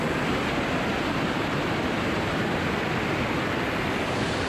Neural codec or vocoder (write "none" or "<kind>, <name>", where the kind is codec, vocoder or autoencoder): none